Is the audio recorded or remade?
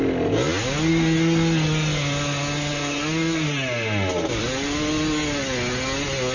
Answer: recorded